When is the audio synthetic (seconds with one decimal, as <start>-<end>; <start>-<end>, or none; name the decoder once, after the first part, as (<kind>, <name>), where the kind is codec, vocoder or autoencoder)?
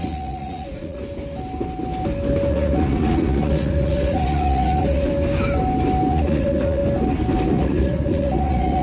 0.0-1.0 (vocoder, Vocos); 2.5-5.1; 6.1-6.8; 7.5-8.8